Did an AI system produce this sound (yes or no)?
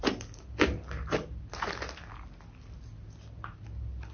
no